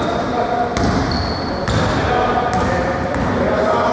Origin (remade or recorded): recorded